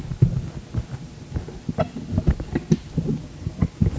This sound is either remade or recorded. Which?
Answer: recorded